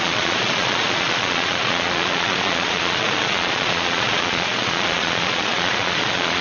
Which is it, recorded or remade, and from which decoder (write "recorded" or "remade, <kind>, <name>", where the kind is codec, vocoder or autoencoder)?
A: remade, vocoder, Vocos